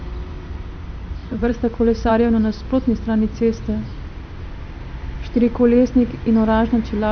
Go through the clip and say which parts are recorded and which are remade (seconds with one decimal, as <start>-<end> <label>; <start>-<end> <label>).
0.0-1.2 recorded; 1.2-2.1 remade; 2.1-7.1 recorded